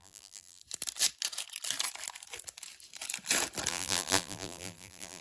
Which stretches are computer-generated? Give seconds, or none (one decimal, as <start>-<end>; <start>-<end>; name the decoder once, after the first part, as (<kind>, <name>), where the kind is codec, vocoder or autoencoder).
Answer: 0.0-0.6 (vocoder, BigVGAN v2); 3.7-5.2